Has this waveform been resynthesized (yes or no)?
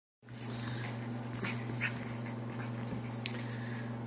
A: no